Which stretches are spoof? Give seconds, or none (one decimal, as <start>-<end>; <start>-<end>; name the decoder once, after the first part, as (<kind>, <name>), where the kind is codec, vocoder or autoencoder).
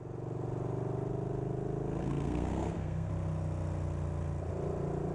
2.0-3.1 (codec, SNAC)